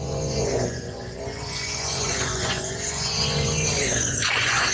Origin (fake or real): fake